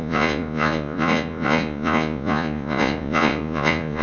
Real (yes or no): no